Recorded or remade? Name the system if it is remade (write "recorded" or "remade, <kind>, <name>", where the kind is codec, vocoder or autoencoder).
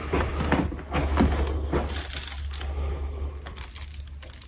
recorded